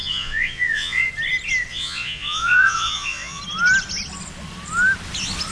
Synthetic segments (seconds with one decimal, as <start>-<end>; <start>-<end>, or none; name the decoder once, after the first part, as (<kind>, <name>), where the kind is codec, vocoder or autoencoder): 0.0-1.1 (vocoder, Vocos); 1.7-3.4